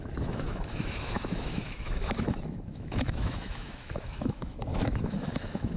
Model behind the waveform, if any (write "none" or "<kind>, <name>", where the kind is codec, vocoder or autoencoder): autoencoder, DAC-VAE